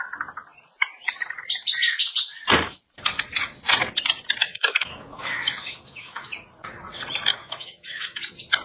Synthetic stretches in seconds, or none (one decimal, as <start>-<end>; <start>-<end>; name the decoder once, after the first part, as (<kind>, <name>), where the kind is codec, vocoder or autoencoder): 4.4-6.3 (autoencoder, DAC-VAE); 7.3-8.2